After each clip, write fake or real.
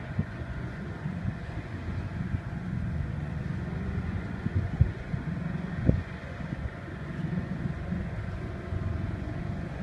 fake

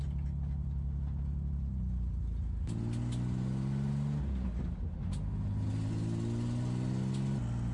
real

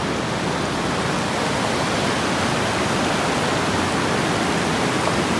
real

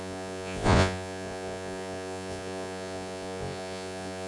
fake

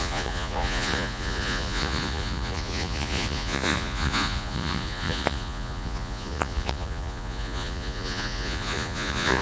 fake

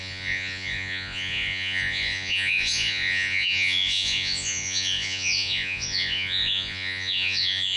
fake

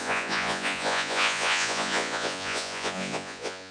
fake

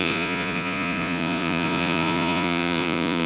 fake